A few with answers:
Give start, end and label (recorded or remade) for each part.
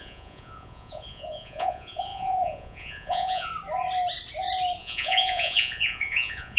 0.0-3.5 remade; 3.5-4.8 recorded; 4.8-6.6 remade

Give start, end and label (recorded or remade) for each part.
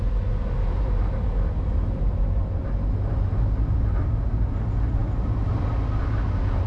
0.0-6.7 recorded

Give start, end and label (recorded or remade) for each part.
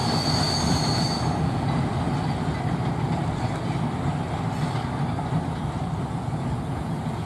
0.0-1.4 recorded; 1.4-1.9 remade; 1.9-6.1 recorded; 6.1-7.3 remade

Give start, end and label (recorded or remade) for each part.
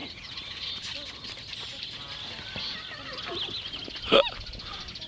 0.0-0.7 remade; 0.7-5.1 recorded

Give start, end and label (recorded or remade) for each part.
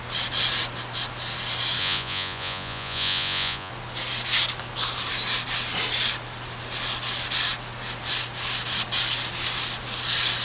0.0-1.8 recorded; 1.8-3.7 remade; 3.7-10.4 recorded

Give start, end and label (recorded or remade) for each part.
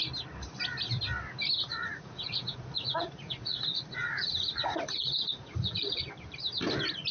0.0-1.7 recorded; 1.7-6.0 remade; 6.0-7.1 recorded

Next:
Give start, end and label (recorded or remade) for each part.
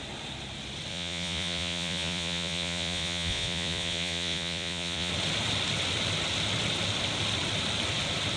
0.0-0.9 recorded; 0.9-5.1 remade; 5.1-8.4 recorded